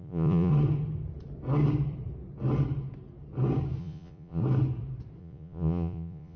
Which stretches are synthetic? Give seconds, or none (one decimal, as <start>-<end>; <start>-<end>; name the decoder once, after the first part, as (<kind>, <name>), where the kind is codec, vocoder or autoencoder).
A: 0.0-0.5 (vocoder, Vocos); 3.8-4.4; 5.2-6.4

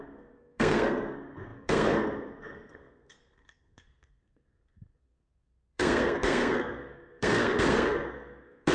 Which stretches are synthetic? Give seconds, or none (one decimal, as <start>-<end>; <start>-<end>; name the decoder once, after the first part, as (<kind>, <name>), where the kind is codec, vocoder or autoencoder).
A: 0.0-8.7 (codec, SNAC)

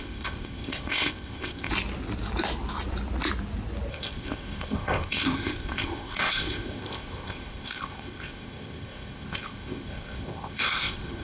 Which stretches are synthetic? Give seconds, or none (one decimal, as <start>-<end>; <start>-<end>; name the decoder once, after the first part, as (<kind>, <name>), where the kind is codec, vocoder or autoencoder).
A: 0.0-1.7 (codec, ZipCodec); 3.9-11.2

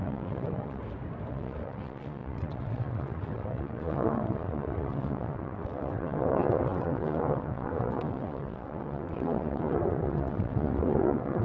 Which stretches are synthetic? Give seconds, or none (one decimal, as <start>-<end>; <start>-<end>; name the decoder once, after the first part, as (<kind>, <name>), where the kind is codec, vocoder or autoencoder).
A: 0.0-0.8 (vocoder, WaveNeXt); 1.3-11.4

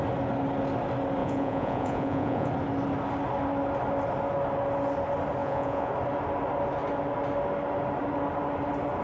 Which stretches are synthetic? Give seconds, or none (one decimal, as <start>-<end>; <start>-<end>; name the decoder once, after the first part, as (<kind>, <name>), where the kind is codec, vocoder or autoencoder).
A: 1.2-2.5 (vocoder, Vocos); 5.4-5.9